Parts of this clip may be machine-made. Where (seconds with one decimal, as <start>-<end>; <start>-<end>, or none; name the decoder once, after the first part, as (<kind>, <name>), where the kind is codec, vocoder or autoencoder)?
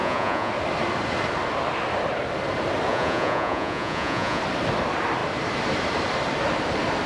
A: 0.0-0.5 (vocoder, Vocos); 2.9-4.4